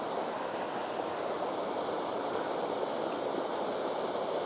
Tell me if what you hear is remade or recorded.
recorded